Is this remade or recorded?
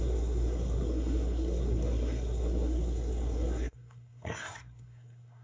remade